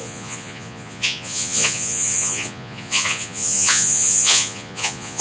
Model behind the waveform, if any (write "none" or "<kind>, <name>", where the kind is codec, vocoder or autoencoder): vocoder, Vocos